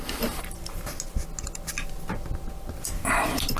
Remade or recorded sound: recorded